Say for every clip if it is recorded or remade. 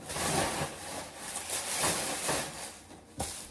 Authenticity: recorded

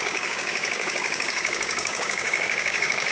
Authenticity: remade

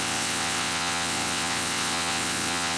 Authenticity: remade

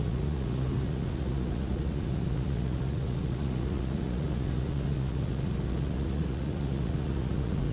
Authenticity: remade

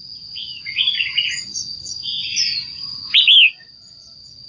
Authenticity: recorded